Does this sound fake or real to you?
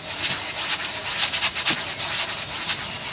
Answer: real